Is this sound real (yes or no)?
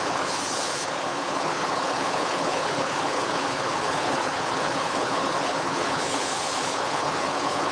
no